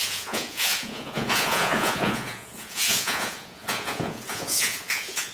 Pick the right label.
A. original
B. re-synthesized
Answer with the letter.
B